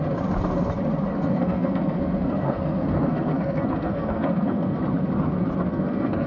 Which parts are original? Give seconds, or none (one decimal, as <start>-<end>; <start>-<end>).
0.0-1.1; 4.8-5.7